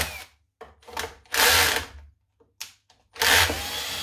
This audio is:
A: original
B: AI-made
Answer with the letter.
A